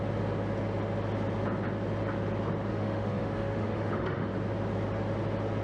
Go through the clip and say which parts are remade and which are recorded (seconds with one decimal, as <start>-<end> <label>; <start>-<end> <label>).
0.0-2.7 recorded; 2.7-4.3 remade; 4.3-5.6 recorded

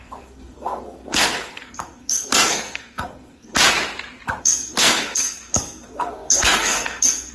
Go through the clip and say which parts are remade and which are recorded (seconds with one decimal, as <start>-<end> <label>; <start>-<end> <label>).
0.0-3.5 remade; 3.5-4.4 recorded; 4.4-7.3 remade